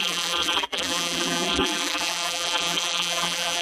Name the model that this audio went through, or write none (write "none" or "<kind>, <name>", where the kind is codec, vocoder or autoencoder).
vocoder, BigVGAN v2